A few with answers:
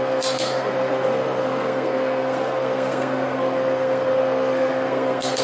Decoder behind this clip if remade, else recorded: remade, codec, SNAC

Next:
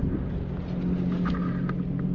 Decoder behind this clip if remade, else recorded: recorded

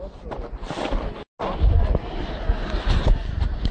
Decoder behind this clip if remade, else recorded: recorded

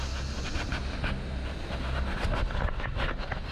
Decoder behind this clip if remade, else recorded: recorded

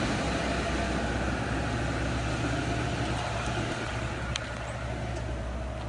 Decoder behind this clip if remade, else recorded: recorded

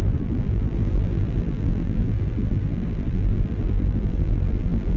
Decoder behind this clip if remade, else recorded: remade, vocoder, BigVGAN v2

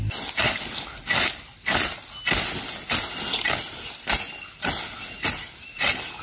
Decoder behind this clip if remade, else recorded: recorded